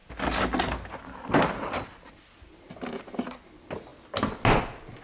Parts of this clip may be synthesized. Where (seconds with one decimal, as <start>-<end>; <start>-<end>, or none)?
none